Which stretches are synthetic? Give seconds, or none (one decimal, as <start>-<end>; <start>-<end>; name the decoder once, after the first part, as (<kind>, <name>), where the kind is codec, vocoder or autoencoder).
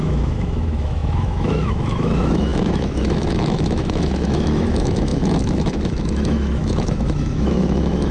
0.0-8.1 (autoencoder, DAC-VAE)